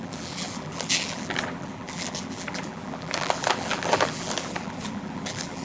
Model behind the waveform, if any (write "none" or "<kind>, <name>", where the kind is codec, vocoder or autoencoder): vocoder, BigVGAN v2